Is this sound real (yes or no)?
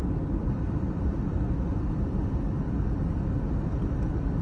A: no